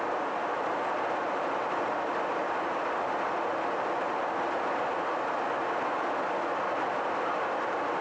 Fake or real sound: real